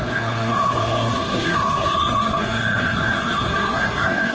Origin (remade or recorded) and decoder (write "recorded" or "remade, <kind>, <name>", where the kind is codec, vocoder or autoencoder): remade, codec, SNAC